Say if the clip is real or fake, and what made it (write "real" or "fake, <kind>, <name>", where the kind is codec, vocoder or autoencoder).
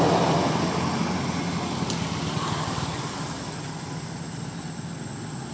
real